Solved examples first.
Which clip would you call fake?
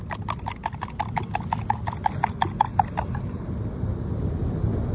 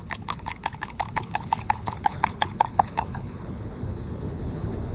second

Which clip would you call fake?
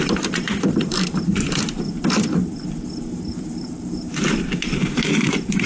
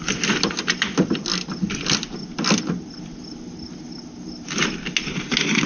first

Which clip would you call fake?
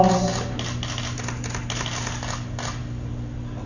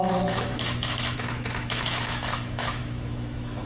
second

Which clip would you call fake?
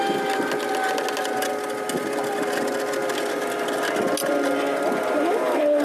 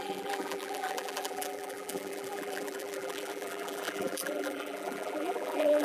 second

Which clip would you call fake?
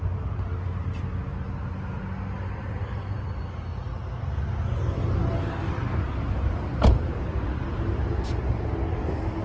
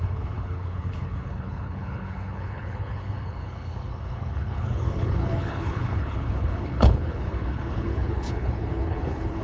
second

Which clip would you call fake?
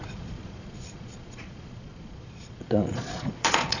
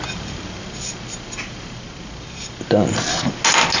first